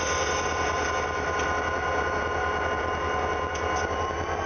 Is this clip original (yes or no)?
yes